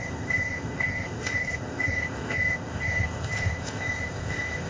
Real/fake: fake